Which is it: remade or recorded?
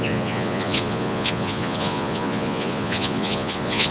remade